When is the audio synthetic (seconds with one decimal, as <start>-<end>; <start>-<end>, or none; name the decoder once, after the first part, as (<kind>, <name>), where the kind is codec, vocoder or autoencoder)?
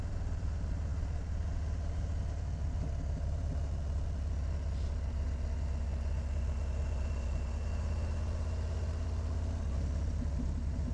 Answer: none